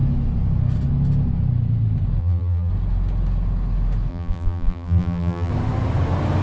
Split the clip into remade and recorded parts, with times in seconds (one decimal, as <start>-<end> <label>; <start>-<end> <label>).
0.0-2.2 recorded; 2.2-2.7 remade; 2.7-4.1 recorded; 4.1-5.5 remade; 5.5-6.4 recorded